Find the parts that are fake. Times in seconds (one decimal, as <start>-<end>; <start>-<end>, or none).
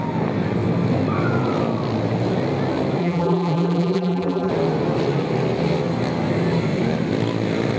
3.0-4.5